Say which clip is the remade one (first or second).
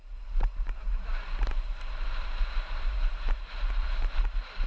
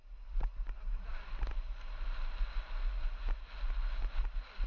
first